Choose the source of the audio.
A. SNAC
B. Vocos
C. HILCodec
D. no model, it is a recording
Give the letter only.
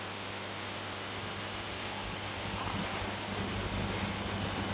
D